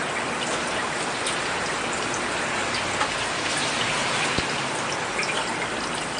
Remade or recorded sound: recorded